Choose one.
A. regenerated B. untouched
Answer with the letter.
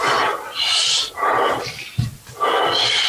B